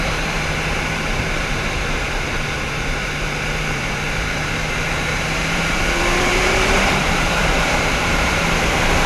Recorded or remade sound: remade